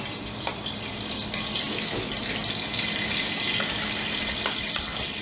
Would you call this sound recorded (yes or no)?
yes